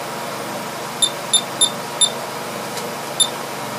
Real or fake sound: real